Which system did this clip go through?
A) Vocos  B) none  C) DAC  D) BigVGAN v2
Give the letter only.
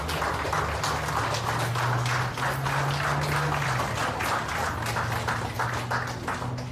B